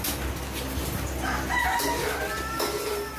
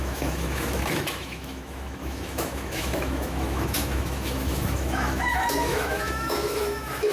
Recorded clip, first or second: first